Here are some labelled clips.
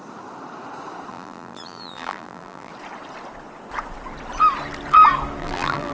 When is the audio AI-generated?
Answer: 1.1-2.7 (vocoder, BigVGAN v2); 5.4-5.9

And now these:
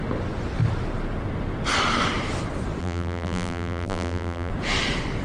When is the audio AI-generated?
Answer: 2.8-4.5 (vocoder, BigVGAN v2)